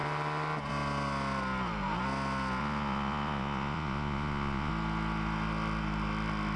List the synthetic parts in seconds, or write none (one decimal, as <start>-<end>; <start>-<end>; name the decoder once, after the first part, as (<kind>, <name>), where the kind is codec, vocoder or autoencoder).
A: 2.6-4.7 (vocoder, Vocos)